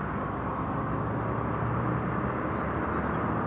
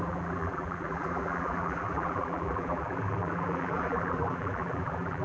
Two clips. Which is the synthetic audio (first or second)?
second